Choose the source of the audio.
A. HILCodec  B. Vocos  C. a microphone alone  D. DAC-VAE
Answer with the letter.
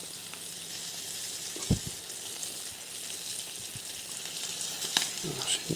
C